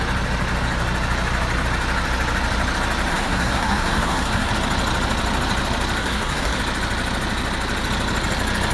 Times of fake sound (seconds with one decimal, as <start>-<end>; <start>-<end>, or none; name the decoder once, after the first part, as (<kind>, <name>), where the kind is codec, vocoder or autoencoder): 3.1-4.5 (codec, SNAC); 6.0-6.6